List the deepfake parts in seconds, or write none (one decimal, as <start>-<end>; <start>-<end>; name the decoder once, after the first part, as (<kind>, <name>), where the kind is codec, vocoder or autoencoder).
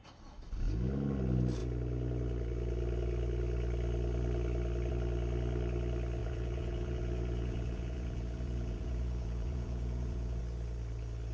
6.2-10.4 (vocoder, Vocos)